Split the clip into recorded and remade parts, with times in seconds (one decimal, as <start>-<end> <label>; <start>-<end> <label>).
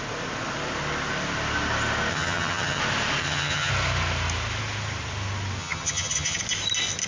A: 0.0-2.1 recorded; 2.1-2.8 remade; 2.8-3.2 recorded; 3.2-3.7 remade; 3.7-5.6 recorded; 5.6-6.4 remade; 6.4-7.1 recorded